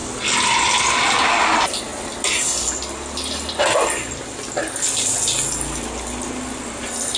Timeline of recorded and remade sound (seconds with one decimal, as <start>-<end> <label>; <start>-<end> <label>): 0.0-0.6 recorded; 0.6-1.9 remade; 1.9-5.8 recorded; 5.8-7.2 remade